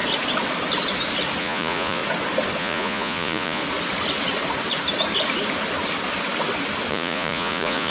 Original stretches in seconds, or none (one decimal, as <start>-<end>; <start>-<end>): 0.0-1.4; 2.0-2.6; 3.6-6.9